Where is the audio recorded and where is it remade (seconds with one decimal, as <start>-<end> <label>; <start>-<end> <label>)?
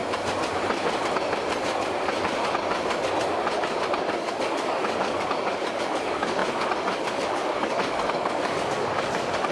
0.0-4.0 recorded; 4.0-9.5 remade